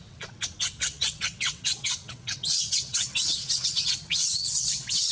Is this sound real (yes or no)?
no